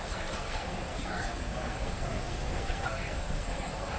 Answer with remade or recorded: remade